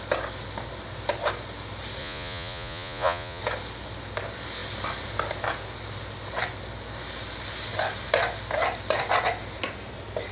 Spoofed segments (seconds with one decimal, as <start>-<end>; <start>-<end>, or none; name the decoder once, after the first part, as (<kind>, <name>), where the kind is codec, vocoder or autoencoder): 2.0-3.4 (vocoder, Vocos)